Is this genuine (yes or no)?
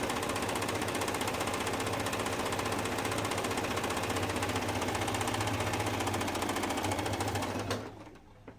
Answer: yes